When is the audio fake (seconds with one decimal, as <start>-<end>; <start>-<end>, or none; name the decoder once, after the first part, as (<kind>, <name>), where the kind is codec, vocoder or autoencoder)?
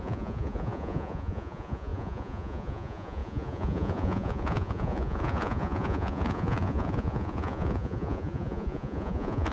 0.0-9.5 (vocoder, Vocos)